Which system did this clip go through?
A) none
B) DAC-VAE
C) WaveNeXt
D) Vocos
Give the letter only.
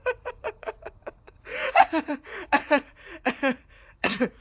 D